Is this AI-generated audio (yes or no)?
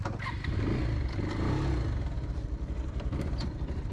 no